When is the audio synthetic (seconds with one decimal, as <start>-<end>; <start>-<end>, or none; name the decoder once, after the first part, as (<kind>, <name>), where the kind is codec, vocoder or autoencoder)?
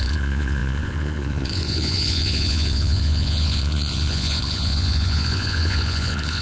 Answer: 0.0-6.4 (vocoder, Vocos)